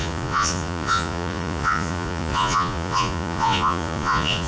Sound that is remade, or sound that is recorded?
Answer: remade